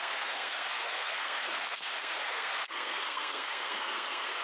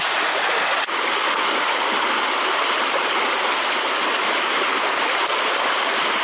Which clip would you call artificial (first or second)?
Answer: first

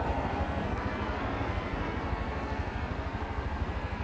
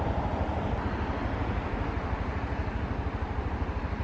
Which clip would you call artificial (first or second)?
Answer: first